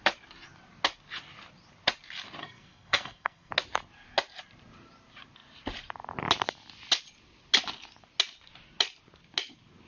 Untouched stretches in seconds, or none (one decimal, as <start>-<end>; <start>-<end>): 0.0-2.4; 3.5-9.9